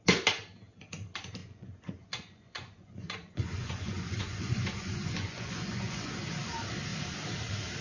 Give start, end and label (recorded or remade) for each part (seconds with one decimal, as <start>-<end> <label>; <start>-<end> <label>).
0.0-1.4 recorded; 1.4-6.1 remade; 6.1-7.8 recorded